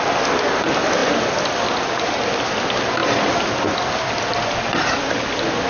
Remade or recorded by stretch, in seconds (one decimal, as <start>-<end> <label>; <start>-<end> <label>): 0.0-1.0 recorded; 1.0-1.9 remade; 1.9-3.0 recorded; 3.0-4.3 remade; 4.3-5.7 recorded